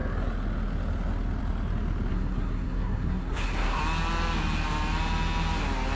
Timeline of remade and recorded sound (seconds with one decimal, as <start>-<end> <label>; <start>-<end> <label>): 0.0-2.1 recorded; 2.1-3.8 remade; 3.8-6.0 recorded